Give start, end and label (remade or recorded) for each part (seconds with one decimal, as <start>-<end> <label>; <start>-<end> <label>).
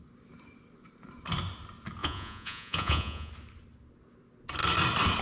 0.0-2.0 recorded; 2.0-3.3 remade; 3.3-5.2 recorded